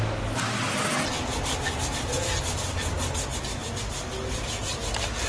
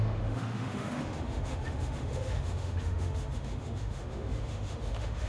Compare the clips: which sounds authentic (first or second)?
first